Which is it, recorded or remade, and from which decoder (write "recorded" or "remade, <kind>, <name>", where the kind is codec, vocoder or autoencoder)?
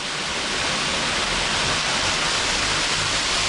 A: recorded